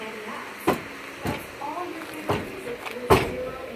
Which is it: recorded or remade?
recorded